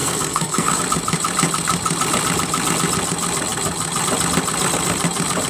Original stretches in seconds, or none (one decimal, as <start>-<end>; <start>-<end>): 0.8-5.5